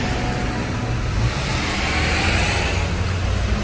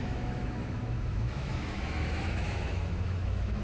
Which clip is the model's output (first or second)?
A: second